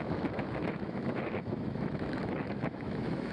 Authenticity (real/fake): fake